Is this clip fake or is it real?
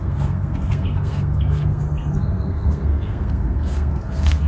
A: fake